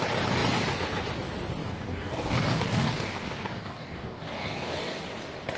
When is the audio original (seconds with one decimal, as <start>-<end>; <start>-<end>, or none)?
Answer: 0.0-1.6; 5.0-5.6